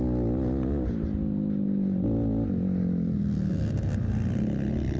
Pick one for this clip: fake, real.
real